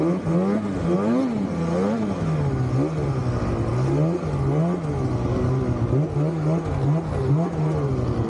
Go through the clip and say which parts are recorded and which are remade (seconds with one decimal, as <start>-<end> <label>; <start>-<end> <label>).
0.0-8.3 recorded